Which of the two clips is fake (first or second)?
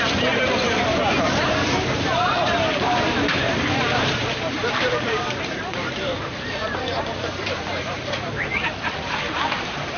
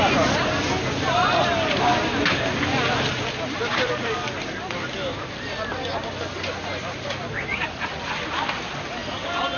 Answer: first